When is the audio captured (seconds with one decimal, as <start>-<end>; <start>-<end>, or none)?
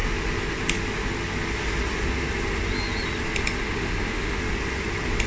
0.0-3.6; 4.4-5.3